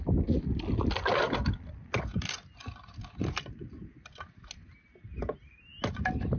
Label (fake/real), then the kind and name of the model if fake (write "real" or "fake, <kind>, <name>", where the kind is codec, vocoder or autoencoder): real